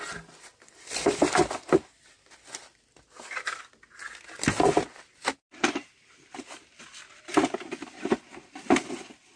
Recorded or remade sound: recorded